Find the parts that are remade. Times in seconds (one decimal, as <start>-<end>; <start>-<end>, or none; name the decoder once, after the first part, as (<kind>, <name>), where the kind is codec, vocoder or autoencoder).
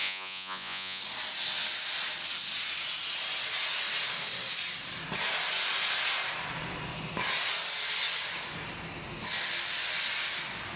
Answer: 0.0-1.0 (vocoder, Vocos)